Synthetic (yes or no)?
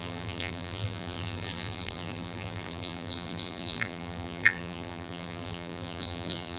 yes